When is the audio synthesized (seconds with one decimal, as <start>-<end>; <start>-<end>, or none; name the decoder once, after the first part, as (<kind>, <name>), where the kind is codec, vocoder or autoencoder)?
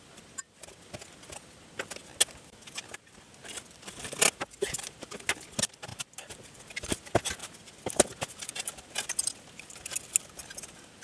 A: none